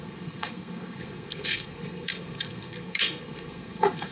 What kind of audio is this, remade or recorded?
remade